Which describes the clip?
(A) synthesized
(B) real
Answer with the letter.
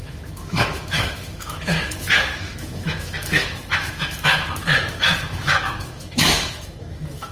A